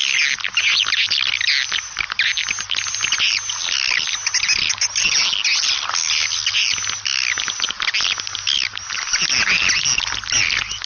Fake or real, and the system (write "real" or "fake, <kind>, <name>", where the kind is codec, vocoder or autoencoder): real